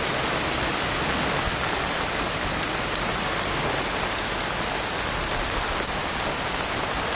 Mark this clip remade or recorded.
recorded